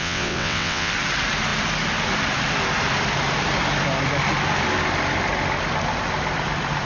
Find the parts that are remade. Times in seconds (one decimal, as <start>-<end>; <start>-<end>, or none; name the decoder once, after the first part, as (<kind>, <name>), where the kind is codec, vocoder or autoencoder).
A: 0.0-0.9 (vocoder, WaveNeXt)